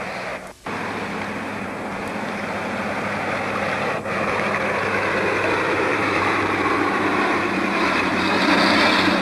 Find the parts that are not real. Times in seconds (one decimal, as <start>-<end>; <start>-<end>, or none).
1.5-2.1; 5.9-8.3